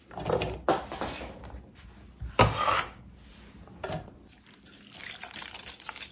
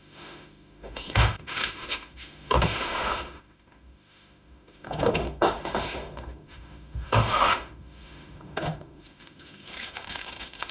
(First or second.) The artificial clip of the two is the second